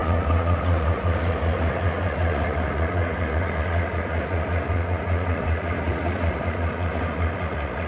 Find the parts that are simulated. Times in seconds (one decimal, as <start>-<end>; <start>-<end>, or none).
0.0-7.9